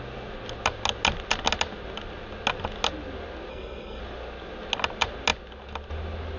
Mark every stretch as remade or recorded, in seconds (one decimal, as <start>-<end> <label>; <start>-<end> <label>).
0.0-3.5 recorded; 3.5-4.0 remade; 4.0-6.4 recorded